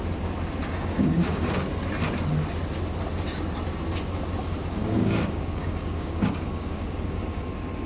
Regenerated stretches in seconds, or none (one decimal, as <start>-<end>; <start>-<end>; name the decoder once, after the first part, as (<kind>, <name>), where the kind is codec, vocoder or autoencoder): 0.6-1.8 (codec, DAC); 4.6-7.4